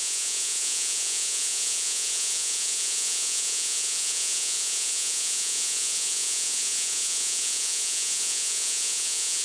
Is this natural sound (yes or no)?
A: no